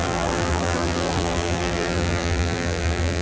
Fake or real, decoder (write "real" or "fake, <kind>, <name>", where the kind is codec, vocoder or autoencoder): fake, vocoder, BigVGAN v2